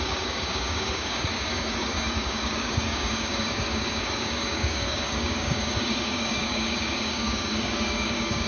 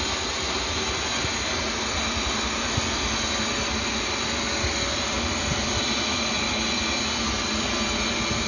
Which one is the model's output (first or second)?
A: first